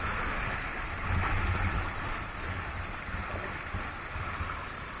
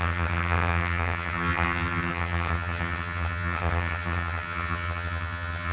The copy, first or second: second